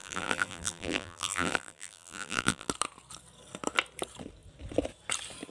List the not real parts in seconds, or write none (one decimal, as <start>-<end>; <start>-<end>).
0.0-2.7